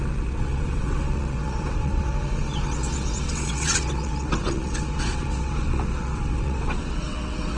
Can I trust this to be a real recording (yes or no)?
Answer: no